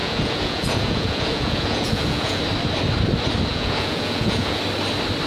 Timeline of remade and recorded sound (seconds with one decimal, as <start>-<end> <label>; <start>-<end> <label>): 0.0-2.4 remade; 2.4-3.5 recorded; 3.5-4.6 remade; 4.6-5.3 recorded